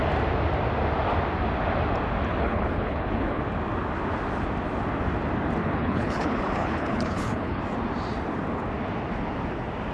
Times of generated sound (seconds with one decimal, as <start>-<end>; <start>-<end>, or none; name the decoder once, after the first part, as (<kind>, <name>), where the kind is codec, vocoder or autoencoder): 2.3-3.4 (codec, HILCodec); 5.6-7.6